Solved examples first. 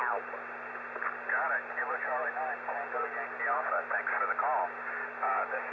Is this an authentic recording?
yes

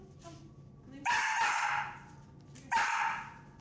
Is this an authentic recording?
yes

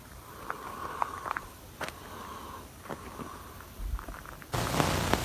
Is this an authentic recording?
yes